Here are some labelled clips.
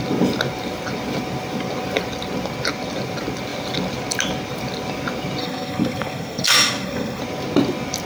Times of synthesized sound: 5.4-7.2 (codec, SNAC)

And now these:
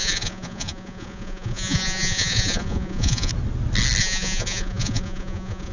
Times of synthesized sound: 0.0-3.3 (vocoder, Vocos); 4.0-5.7

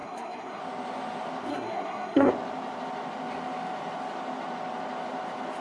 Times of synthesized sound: 0.0-0.6 (codec, SNAC); 1.5-2.3

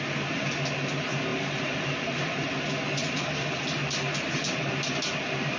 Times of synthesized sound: 1.3-4.7 (vocoder, BigVGAN v2)

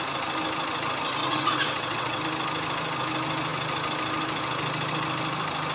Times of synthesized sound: 1.2-2.2 (vocoder, WaveNeXt)

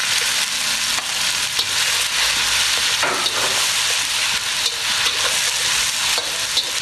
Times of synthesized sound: none

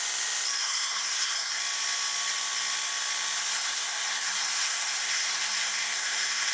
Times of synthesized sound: 0.6-1.6 (codec, SNAC); 3.5-6.5